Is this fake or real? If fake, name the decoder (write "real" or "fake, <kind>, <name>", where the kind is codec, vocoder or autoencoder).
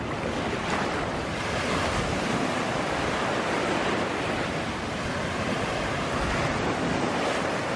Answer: real